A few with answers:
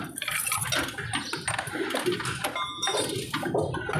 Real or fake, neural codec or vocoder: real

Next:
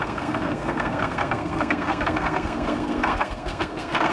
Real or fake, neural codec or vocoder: fake, codec, SNAC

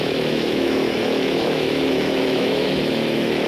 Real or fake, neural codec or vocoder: fake, autoencoder, DAC-VAE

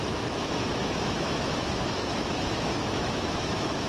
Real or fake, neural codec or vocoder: fake, autoencoder, DAC-VAE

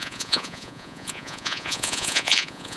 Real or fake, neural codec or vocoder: fake, vocoder, Vocos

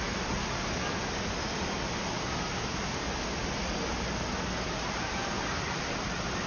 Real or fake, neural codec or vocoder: real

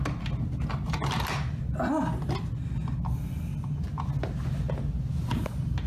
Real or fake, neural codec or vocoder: real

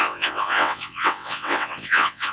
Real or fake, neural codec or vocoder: fake, vocoder, WaveNeXt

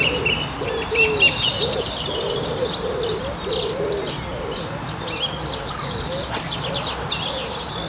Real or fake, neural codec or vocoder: real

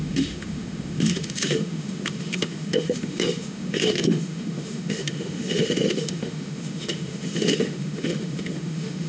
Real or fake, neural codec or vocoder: fake, autoencoder, DAC-VAE